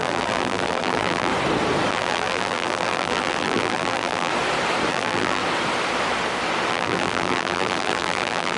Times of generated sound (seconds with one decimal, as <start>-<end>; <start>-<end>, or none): 0.0-1.3; 1.9-4.3; 4.9-5.4; 6.7-8.6